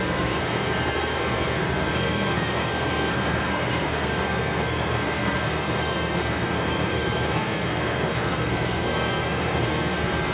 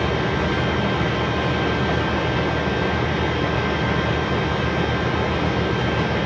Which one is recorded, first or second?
second